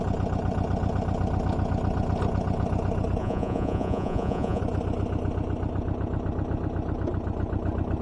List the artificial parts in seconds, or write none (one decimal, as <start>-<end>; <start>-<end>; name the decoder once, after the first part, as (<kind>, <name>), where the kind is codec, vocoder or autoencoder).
3.2-4.6 (vocoder, Vocos)